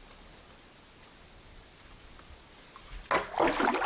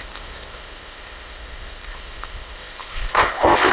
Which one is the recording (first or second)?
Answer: first